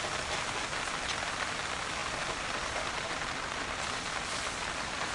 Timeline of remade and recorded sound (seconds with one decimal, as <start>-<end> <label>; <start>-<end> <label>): 0.0-2.0 recorded; 2.0-5.1 remade